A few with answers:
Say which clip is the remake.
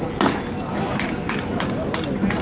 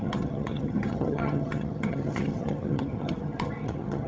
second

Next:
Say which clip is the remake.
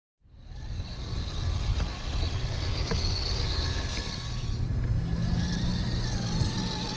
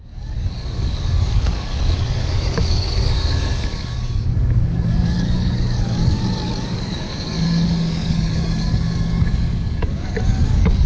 second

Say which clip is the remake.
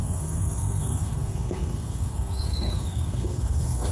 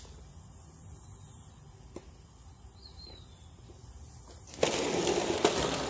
first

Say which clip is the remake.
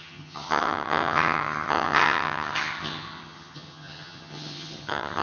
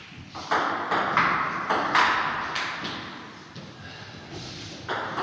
first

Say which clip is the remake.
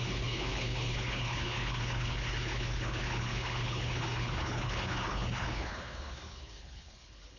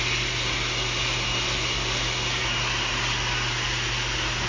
first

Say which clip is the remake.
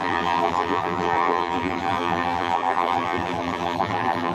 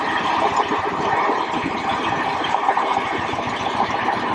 first